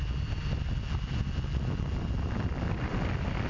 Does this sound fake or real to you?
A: real